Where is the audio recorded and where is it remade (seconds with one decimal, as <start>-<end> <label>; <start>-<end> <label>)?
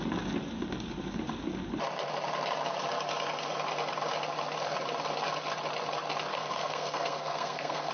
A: 0.0-6.3 recorded; 6.3-7.9 remade